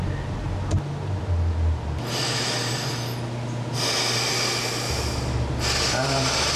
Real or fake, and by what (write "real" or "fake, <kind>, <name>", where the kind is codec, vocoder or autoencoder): real